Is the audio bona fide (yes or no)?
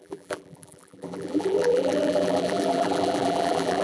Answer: no